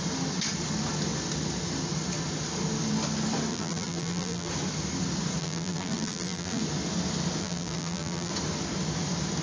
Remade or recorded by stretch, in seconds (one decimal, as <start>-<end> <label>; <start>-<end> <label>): 0.0-3.5 recorded; 3.5-4.5 remade; 4.5-5.4 recorded; 5.4-6.6 remade; 6.6-7.4 recorded; 7.4-8.3 remade; 8.3-9.4 recorded

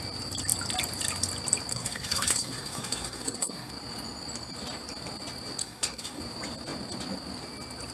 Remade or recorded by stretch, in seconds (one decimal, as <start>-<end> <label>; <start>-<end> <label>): 0.0-1.7 recorded; 1.7-3.7 remade; 3.7-5.6 recorded; 5.6-6.2 remade; 6.2-7.9 recorded

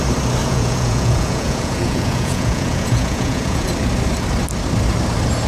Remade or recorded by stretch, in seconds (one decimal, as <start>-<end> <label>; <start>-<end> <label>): 0.0-0.4 recorded; 0.4-3.7 remade; 3.7-5.5 recorded

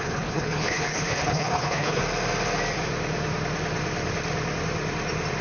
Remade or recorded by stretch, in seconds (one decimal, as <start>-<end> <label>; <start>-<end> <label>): 0.0-2.0 remade; 2.0-5.4 recorded